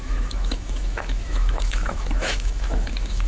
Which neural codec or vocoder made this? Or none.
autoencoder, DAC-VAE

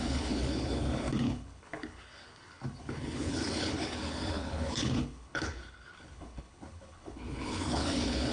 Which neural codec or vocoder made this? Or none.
codec, HILCodec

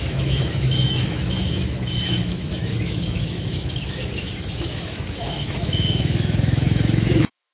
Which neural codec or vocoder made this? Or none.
autoencoder, DAC-VAE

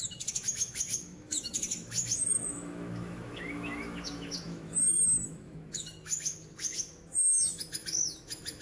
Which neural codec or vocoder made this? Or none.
autoencoder, DAC-VAE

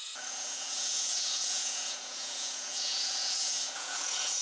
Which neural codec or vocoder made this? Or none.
vocoder, Vocos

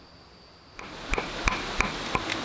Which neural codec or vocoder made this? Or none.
none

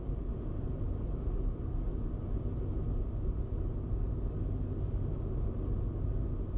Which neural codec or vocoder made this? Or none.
none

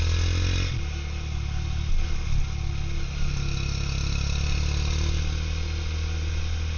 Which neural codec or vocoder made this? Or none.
none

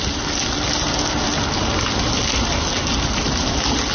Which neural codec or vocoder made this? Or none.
none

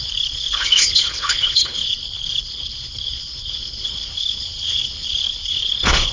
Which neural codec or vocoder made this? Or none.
codec, HILCodec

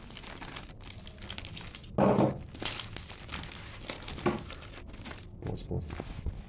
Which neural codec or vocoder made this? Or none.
none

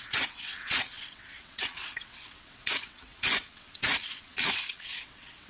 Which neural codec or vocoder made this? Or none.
vocoder, WaveNeXt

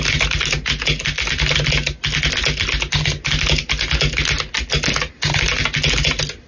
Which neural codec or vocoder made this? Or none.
none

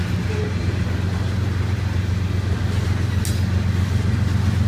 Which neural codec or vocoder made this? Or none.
none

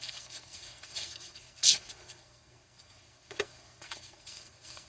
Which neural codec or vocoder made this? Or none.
codec, SNAC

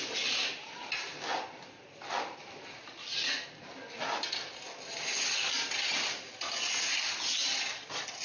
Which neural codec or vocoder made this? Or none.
none